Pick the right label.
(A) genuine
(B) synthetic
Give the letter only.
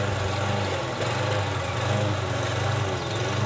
A